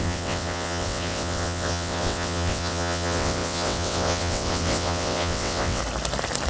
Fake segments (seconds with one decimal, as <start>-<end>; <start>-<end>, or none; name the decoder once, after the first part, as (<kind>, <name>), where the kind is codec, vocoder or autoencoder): 0.0-5.8 (vocoder, WaveNeXt)